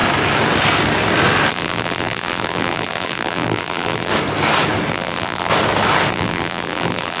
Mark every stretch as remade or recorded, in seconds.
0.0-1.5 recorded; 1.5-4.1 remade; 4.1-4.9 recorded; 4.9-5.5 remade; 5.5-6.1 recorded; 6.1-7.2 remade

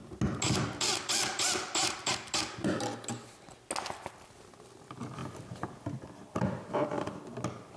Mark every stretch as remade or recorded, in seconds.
0.0-7.8 recorded

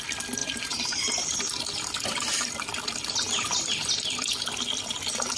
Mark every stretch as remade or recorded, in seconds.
0.0-0.4 recorded; 0.4-1.2 remade; 1.2-5.4 recorded

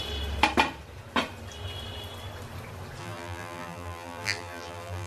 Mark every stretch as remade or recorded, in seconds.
0.0-3.0 recorded; 3.0-5.1 remade

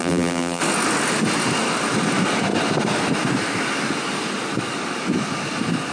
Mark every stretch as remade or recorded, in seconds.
0.0-0.6 remade; 0.6-5.9 recorded

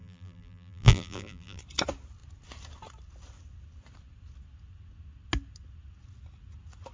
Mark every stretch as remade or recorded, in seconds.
0.0-1.6 remade; 1.6-6.9 recorded

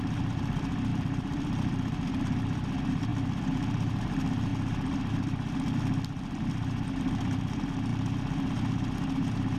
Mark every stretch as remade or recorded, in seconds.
0.0-4.5 remade; 4.5-5.1 recorded; 5.1-7.9 remade; 7.9-9.6 recorded